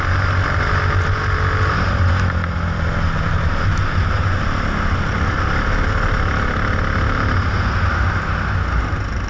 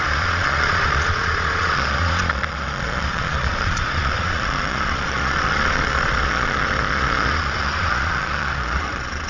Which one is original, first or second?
first